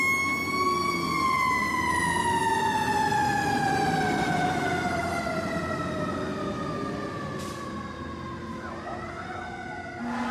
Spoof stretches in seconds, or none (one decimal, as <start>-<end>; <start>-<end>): 5.0-5.6

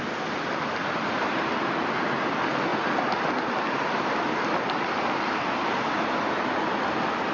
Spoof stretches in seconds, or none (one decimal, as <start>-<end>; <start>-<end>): 2.7-5.1

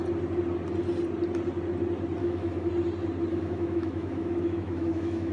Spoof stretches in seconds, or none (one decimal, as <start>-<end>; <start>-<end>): 2.2-2.7; 3.3-5.3

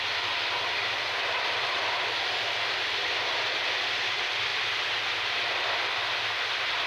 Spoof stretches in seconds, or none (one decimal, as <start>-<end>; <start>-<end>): 0.0-6.9

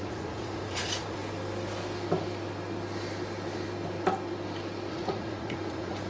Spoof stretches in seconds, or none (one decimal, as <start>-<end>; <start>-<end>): 0.0-1.2; 4.9-6.1

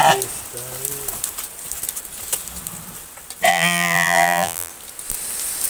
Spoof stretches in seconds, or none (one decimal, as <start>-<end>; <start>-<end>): 3.5-4.7